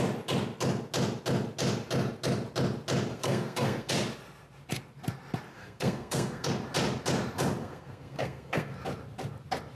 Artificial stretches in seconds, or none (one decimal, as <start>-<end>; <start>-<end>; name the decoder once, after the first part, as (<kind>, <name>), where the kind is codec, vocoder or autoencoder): 3.1-3.9 (codec, SNAC); 5.5-6.5; 7.6-8.7